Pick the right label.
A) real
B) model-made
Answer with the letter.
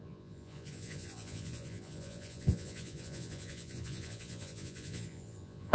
B